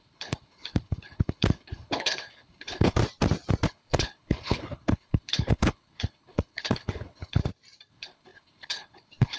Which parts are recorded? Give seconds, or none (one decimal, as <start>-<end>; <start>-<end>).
3.0-3.7; 7.4-7.9